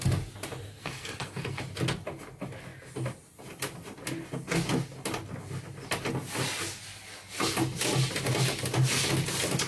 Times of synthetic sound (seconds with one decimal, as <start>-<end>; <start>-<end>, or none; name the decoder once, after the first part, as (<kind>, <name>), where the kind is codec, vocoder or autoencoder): 0.7-1.6 (codec, SNAC)